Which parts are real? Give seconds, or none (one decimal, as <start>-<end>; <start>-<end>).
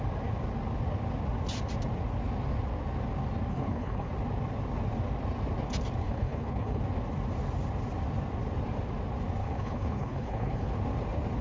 0.0-3.5; 4.1-6.0; 6.8-9.4; 10.7-11.4